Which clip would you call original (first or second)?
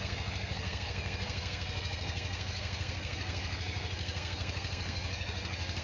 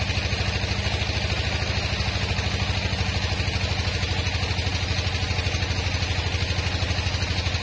second